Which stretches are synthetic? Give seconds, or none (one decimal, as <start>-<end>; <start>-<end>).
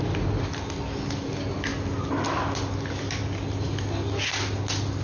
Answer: none